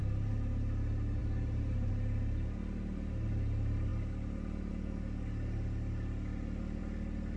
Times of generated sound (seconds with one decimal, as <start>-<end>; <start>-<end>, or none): 1.2-1.9

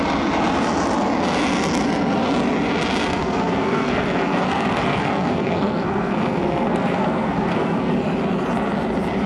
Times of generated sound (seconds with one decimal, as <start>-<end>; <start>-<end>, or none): 3.2-7.9

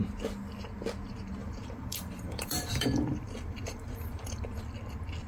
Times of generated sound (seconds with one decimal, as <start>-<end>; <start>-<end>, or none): 1.4-4.6

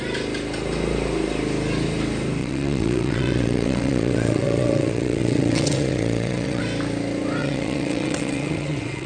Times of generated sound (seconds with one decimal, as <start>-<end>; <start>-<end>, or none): 2.4-6.6; 7.4-9.1

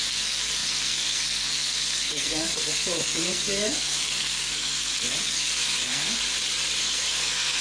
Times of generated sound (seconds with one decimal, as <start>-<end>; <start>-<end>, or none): 0.0-6.2; 6.8-7.6

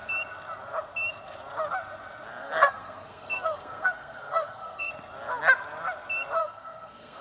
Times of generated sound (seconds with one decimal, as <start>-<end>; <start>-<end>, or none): 2.3-4.9; 6.4-7.2

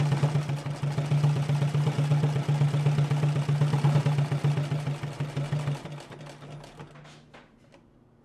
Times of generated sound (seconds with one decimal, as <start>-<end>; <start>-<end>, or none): none

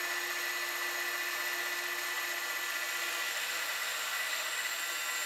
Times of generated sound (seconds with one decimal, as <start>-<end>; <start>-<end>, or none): 3.3-4.8